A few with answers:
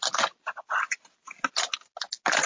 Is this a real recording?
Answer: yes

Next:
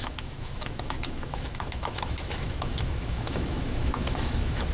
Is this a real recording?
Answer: no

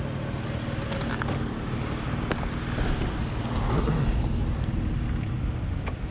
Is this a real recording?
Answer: yes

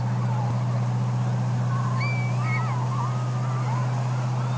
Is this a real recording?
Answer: yes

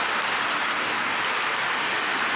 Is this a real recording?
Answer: yes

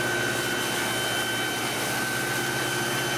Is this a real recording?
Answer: yes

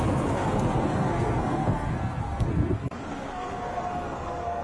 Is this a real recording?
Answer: no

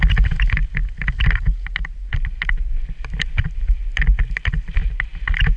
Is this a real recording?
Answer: yes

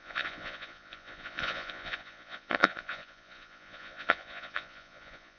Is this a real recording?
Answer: no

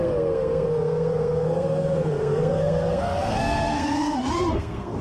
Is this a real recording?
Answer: no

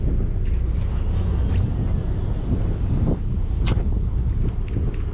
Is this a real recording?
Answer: yes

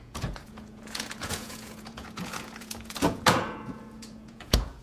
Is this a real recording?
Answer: no